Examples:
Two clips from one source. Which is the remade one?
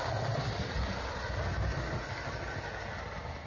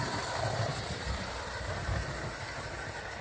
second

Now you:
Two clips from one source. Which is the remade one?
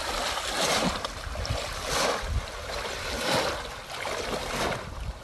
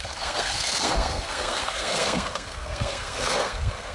second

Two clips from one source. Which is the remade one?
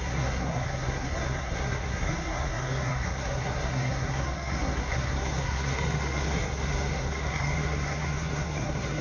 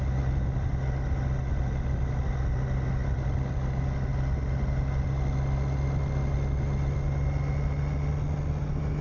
first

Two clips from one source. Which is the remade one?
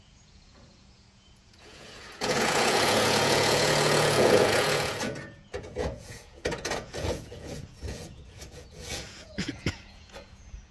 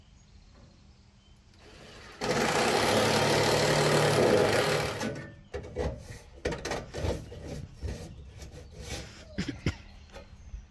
first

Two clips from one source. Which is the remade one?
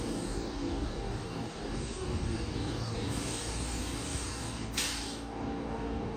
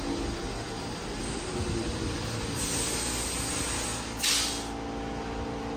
first